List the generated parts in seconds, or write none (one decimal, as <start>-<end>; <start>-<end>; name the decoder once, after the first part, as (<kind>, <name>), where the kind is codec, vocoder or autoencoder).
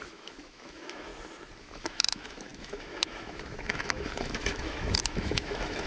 0.0-1.1 (autoencoder, DAC-VAE); 1.6-5.9